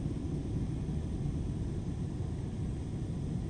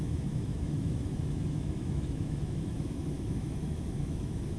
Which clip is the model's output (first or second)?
second